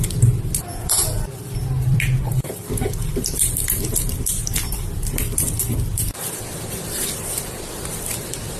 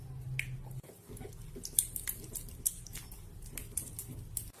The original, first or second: second